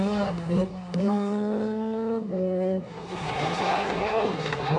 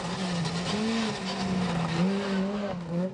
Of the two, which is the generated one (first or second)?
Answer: first